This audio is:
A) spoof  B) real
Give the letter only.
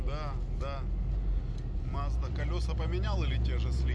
B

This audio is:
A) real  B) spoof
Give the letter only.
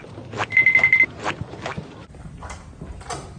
A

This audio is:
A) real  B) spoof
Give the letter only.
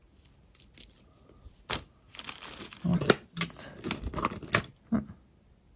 A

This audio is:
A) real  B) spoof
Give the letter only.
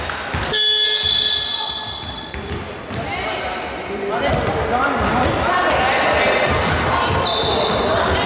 A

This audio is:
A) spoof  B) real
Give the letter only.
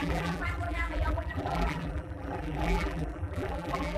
A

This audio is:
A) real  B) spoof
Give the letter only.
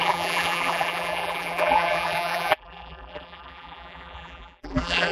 B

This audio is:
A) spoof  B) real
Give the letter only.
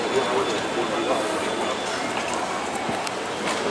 B